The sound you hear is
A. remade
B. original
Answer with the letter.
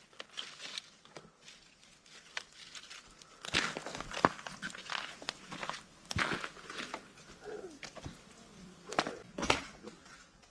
B